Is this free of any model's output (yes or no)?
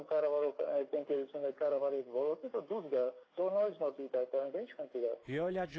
no